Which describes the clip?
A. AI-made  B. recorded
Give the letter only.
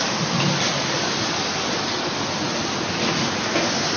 B